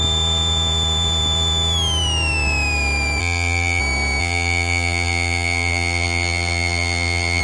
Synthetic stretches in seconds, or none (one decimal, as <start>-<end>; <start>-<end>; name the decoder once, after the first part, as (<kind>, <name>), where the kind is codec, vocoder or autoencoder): 3.2-3.8 (vocoder, BigVGAN v2); 4.2-7.4